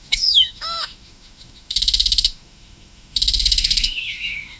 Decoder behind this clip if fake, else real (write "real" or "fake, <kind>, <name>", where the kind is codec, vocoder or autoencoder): fake, autoencoder, DAC-VAE